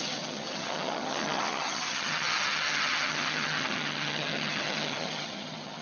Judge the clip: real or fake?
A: fake